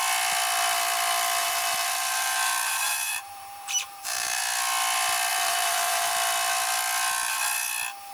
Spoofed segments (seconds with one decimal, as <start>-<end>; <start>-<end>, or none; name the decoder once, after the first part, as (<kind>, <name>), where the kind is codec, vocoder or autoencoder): 1.4-4.4 (vocoder, BigVGAN v2); 5.3-6.1

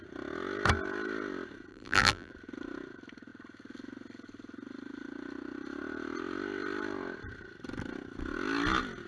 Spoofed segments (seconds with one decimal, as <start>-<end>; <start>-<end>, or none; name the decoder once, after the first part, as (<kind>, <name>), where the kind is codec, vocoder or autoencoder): 1.7-2.3 (vocoder, BigVGAN v2)

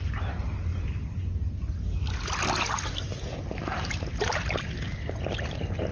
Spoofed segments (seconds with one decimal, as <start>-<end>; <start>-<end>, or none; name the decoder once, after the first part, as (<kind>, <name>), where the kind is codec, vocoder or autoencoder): none

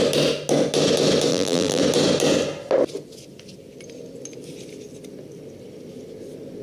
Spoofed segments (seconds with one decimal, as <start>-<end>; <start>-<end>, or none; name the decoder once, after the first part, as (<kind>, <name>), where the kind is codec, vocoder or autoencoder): 1.3-1.8 (vocoder, BigVGAN v2)

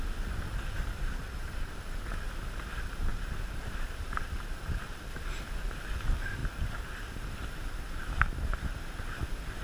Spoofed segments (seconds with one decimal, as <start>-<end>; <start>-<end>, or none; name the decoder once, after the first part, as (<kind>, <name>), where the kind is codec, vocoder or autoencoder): 0.9-1.8 (vocoder, BigVGAN v2); 3.1-5.4; 6.4-8.7

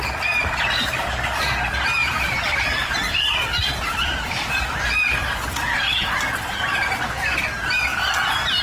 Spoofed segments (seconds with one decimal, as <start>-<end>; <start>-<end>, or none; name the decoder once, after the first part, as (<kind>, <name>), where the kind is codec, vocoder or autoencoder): 2.0-6.0 (vocoder, BigVGAN v2)